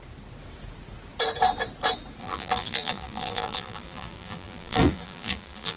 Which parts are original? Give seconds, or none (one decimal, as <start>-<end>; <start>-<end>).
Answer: 0.0-2.2